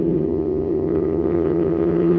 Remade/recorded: remade